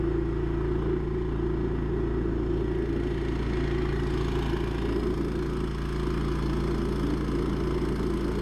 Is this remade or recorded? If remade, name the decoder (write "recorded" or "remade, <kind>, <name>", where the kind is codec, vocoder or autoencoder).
recorded